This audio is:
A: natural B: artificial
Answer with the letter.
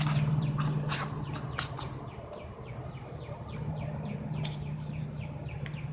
B